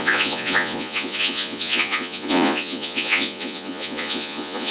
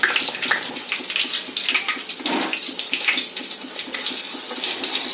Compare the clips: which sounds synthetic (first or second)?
first